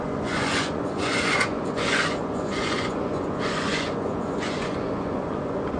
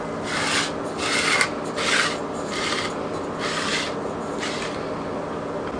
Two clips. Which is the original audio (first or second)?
second